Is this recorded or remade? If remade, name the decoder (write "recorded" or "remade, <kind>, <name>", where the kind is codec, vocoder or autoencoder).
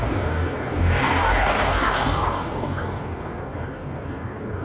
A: remade, codec, DAC